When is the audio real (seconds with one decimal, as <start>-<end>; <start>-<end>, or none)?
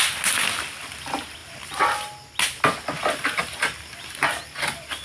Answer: 0.0-5.0